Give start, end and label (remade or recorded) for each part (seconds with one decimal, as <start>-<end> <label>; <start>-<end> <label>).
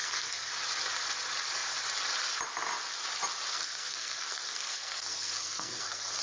0.0-0.5 remade; 0.5-3.5 recorded; 3.5-6.2 remade